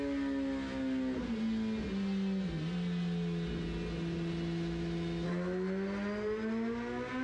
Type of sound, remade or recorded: recorded